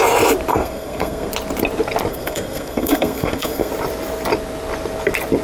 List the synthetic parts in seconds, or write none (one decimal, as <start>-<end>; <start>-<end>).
0.5-1.3; 2.1-3.7